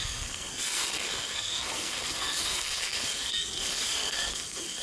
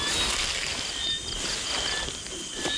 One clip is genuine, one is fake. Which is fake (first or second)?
first